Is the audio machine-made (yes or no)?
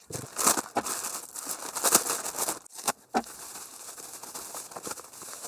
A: no